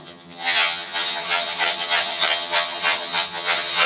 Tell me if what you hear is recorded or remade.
remade